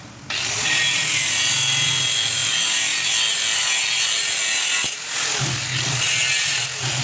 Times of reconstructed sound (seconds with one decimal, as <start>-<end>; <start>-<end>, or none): none